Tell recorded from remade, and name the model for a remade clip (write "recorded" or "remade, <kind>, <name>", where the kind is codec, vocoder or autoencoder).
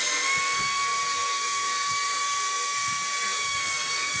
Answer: remade, codec, SNAC